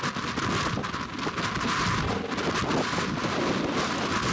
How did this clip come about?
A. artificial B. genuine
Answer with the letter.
B